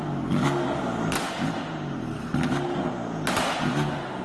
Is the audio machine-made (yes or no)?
no